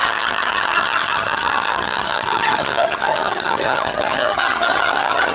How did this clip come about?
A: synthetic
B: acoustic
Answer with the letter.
A